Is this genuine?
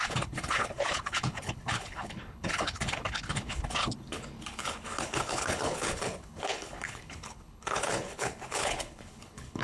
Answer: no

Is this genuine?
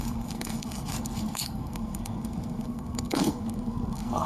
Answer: no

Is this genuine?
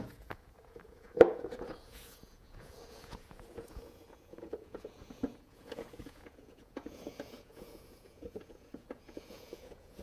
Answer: no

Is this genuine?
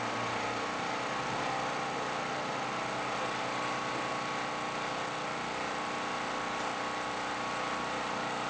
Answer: yes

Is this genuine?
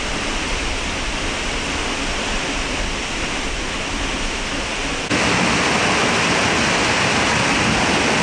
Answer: yes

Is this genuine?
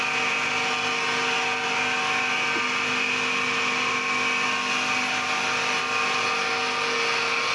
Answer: yes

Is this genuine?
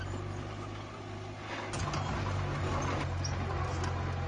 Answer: yes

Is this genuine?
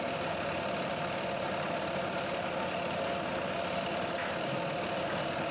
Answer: yes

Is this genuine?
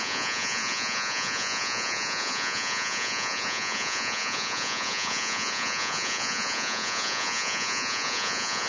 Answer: no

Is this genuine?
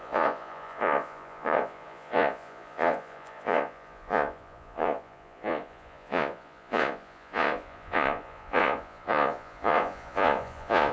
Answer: no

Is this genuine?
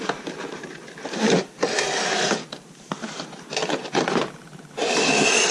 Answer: yes